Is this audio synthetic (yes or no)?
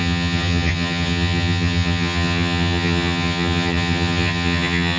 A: yes